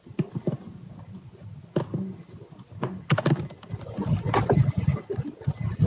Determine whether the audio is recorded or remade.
recorded